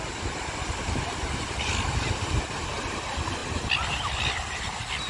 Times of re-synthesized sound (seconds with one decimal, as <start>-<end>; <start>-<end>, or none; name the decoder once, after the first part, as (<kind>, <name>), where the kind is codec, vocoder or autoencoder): none